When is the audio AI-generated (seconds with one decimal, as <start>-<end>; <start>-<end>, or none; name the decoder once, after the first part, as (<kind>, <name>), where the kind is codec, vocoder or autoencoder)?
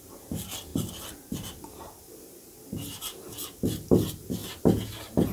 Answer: 0.7-2.1 (vocoder, BigVGAN v2)